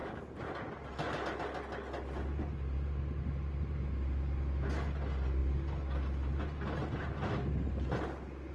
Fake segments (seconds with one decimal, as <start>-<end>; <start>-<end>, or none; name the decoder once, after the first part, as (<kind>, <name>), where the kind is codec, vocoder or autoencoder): none